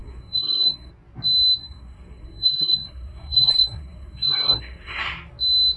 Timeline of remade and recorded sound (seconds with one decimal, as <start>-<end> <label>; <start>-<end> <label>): 0.0-0.9 remade; 0.9-1.6 recorded; 1.6-5.0 remade; 5.0-5.8 recorded